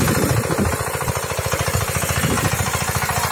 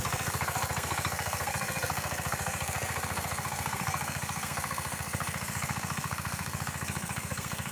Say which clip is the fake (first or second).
second